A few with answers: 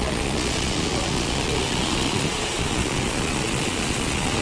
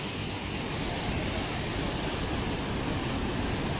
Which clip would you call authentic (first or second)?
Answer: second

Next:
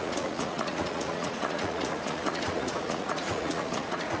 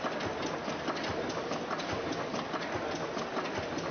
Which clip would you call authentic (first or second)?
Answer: second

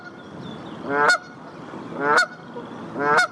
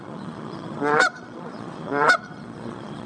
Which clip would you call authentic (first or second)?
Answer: first